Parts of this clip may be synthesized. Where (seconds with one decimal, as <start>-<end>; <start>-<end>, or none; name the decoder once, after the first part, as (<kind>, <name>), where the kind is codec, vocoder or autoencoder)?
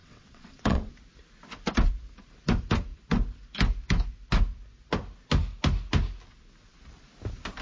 0.0-0.9 (vocoder, WaveNeXt)